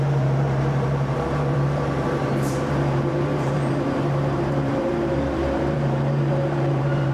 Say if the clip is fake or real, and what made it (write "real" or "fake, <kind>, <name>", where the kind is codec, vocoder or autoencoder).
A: fake, vocoder, BigVGAN v2